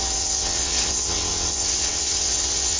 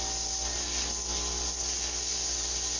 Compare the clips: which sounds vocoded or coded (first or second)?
first